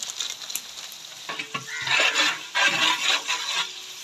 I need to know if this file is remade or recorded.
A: recorded